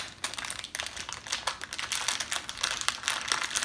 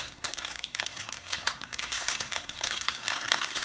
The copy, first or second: second